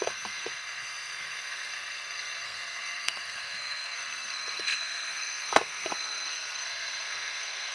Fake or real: fake